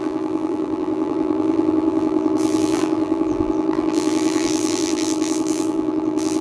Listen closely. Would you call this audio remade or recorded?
remade